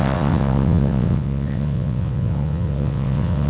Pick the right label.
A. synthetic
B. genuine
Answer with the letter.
A